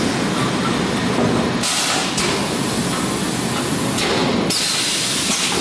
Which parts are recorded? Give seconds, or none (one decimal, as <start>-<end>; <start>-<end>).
0.0-5.6